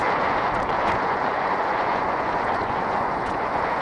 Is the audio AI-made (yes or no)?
yes